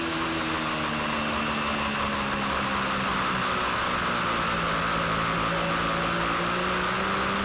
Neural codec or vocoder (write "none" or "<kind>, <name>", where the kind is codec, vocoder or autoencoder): none